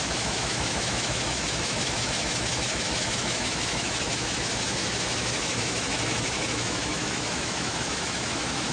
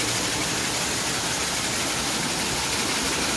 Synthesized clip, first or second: first